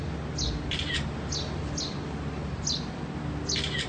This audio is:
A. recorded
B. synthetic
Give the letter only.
A